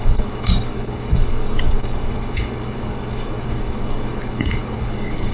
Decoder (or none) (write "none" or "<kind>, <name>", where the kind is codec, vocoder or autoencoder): codec, DAC